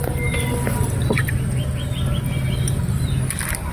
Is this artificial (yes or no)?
no